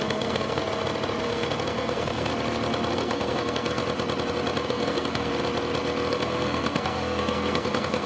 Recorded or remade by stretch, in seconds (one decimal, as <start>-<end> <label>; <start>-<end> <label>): 0.0-0.6 remade; 0.6-1.2 recorded; 1.2-2.3 remade; 2.3-2.9 recorded; 2.9-3.8 remade; 3.8-4.7 recorded; 4.7-5.3 remade; 5.3-6.1 recorded; 6.1-8.1 remade